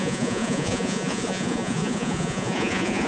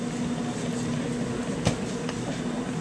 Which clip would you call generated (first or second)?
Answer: first